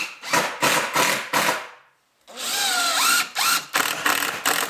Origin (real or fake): real